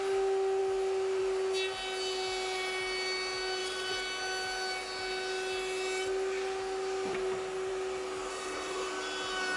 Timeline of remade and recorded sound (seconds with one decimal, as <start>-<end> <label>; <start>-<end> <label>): 0.0-8.3 recorded; 8.3-8.9 remade; 8.9-9.6 recorded